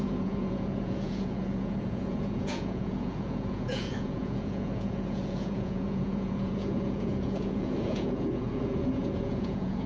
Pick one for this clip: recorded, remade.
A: remade